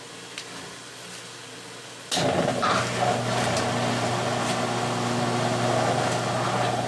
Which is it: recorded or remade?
recorded